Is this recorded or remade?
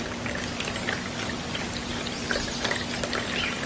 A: recorded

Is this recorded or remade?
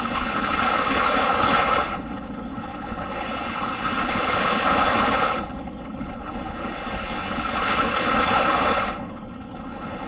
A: remade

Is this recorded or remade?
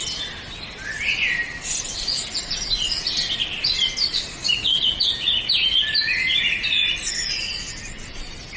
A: recorded